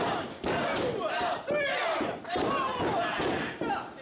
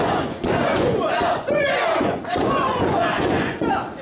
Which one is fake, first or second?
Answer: second